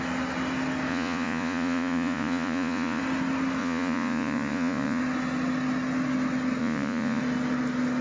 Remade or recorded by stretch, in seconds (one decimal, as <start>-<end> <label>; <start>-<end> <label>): 0.0-0.9 recorded; 0.9-3.0 remade; 3.0-3.6 recorded; 3.6-5.0 remade; 5.0-6.6 recorded; 6.6-7.2 remade; 7.2-8.0 recorded